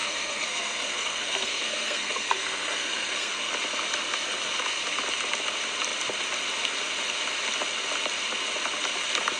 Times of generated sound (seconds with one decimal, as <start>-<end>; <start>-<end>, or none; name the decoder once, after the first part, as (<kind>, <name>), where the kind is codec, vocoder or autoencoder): 0.0-3.5 (codec, SNAC)